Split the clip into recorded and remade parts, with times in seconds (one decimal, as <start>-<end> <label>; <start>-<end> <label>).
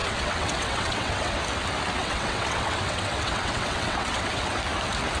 0.0-1.4 remade; 1.4-2.0 recorded; 2.0-4.5 remade; 4.5-5.2 recorded